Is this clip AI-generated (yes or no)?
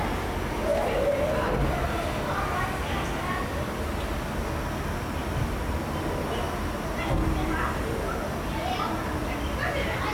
no